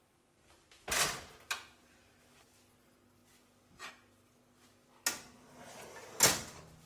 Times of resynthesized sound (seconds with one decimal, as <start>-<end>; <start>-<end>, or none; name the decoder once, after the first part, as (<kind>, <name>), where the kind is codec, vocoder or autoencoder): none